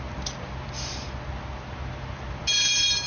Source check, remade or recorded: recorded